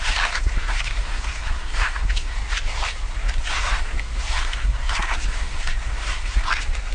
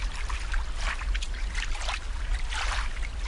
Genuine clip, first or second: second